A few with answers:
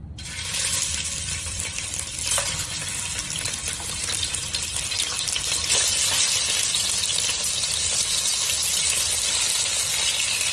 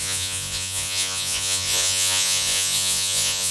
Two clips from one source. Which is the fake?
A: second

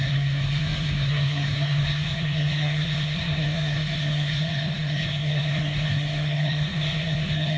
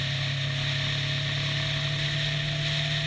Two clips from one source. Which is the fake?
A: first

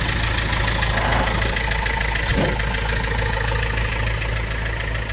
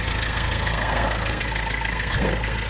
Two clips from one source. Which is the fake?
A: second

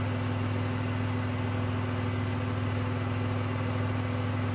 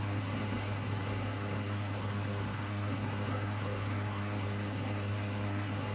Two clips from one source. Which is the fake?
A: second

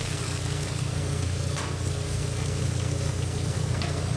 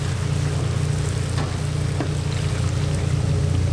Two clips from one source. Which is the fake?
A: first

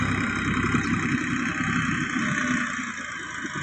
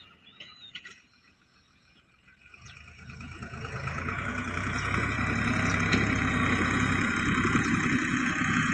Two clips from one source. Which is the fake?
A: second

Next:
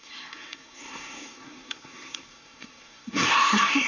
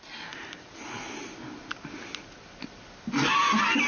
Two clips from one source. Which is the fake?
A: first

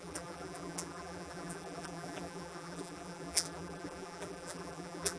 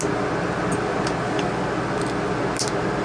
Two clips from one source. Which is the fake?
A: first